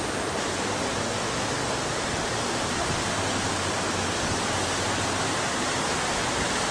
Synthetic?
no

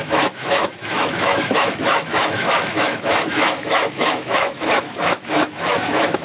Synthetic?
yes